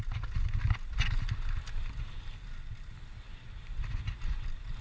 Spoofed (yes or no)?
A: no